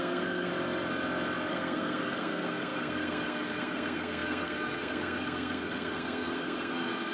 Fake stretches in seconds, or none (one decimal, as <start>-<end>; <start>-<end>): 0.0-0.5; 1.5-7.1